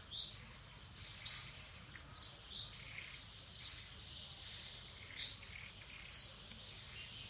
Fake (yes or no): no